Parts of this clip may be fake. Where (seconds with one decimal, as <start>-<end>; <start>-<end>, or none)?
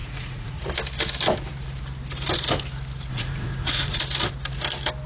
0.0-0.7; 3.1-4.0